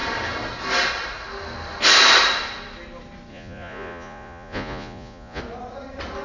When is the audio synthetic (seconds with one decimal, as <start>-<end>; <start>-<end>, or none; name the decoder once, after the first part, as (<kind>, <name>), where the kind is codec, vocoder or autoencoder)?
3.3-5.4 (vocoder, Vocos)